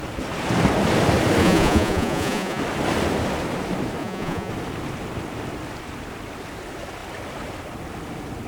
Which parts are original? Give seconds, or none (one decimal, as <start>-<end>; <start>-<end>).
0.0-1.4; 2.6-4.0; 4.5-8.5